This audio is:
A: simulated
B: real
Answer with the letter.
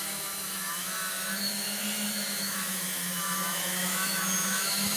A